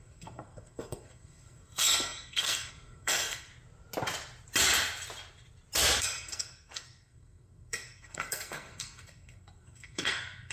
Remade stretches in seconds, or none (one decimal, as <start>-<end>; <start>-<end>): 0.0-3.5; 6.0-10.5